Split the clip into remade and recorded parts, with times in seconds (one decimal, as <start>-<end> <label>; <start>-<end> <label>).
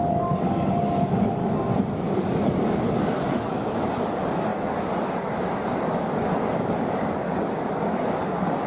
0.0-1.4 remade; 1.4-2.1 recorded; 2.1-8.7 remade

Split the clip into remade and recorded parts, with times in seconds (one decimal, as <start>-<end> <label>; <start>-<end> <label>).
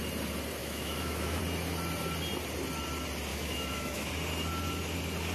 0.0-0.6 recorded; 0.6-1.4 remade; 1.4-3.3 recorded; 3.3-4.1 remade; 4.1-5.3 recorded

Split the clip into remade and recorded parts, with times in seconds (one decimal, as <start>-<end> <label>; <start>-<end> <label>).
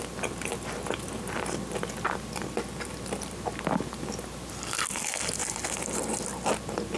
0.0-5.4 recorded; 5.4-6.0 remade; 6.0-7.0 recorded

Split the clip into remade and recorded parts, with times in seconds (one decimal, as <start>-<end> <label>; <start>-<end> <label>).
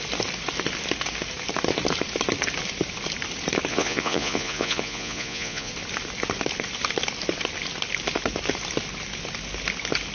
0.0-3.7 recorded; 3.7-5.7 remade; 5.7-10.1 recorded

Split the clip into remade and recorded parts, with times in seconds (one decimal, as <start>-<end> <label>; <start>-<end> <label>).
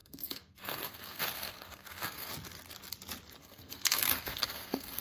0.0-2.3 remade; 2.3-3.4 recorded; 3.4-5.0 remade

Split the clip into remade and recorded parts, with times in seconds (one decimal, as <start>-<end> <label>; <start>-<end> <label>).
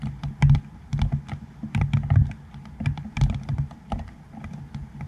0.0-5.1 recorded